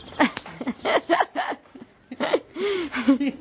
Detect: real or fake real